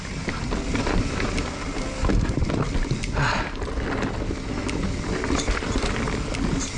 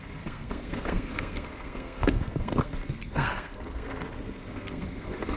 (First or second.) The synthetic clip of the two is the second